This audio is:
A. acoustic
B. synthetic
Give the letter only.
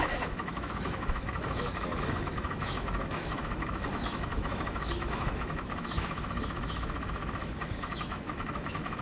B